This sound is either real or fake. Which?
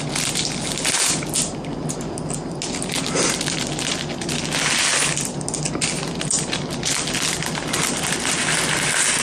real